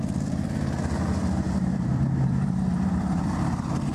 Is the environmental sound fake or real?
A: fake